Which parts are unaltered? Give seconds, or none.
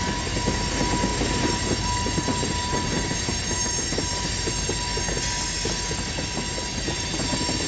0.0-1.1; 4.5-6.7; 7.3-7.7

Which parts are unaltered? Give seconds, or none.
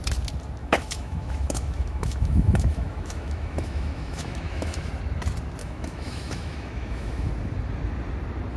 0.0-0.6; 4.9-5.6; 7.3-8.6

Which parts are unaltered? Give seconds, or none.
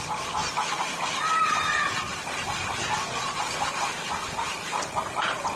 0.0-0.4; 1.3-5.6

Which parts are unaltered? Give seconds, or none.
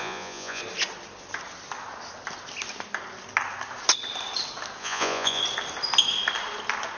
0.6-4.8; 5.4-7.0